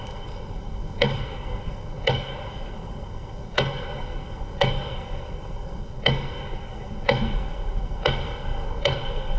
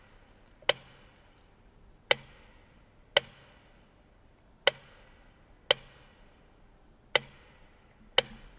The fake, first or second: first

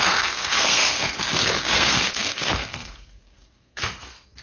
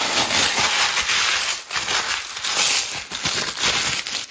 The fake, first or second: first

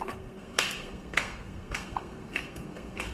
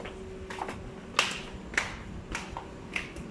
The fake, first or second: first